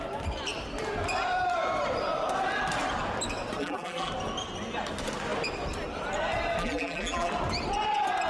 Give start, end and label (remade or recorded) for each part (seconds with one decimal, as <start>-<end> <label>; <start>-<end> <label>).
0.0-3.6 recorded; 3.6-4.1 remade; 4.1-6.6 recorded; 6.6-7.3 remade; 7.3-8.3 recorded